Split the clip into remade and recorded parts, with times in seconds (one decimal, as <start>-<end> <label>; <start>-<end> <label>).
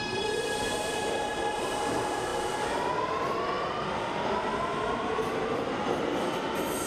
0.0-2.3 remade; 2.3-4.3 recorded; 4.3-4.7 remade; 4.7-5.5 recorded; 5.5-6.9 remade